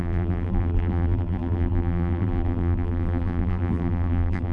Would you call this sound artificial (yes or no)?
yes